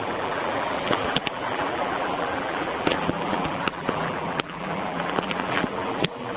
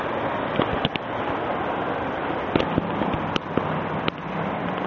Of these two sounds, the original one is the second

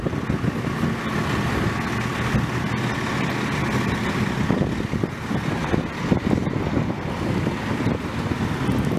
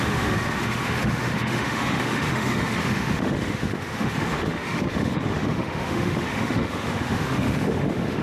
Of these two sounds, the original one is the first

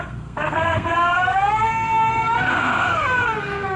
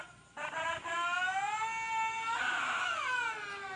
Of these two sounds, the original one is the second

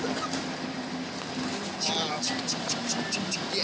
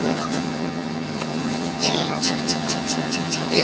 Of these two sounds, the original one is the first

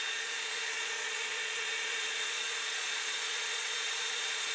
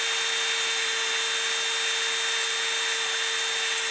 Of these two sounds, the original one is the second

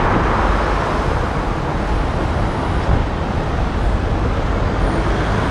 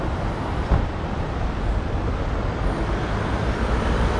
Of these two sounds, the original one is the first